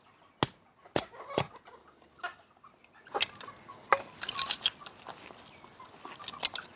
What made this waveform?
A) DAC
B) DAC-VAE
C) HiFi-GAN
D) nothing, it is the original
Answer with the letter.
D